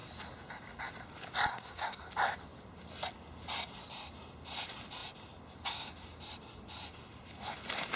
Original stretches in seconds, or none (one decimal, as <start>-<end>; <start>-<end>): 0.0-1.5; 2.1-8.0